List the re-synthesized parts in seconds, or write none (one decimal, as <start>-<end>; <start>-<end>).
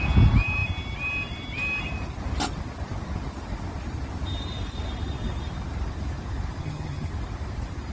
6.6-7.1